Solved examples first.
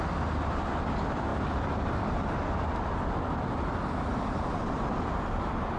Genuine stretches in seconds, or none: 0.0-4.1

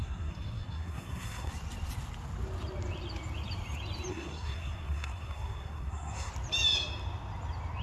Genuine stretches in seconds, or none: 1.5-4.1; 6.3-7.8

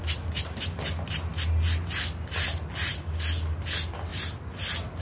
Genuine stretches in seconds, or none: 0.0-5.0